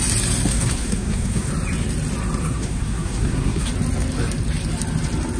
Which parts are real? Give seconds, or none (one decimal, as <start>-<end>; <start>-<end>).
0.0-0.5; 1.5-2.4; 3.7-5.4